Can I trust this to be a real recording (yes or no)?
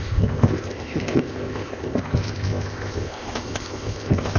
no